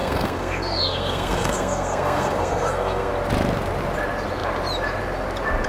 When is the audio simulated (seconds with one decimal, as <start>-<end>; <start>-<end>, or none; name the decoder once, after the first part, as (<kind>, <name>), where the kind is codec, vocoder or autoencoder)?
0.0-3.1 (codec, SNAC)